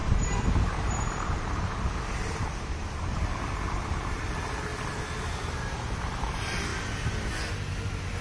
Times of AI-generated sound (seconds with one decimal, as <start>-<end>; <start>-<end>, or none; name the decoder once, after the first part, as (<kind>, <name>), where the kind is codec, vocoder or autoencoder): 0.0-4.7 (vocoder, BigVGAN v2); 5.4-6.7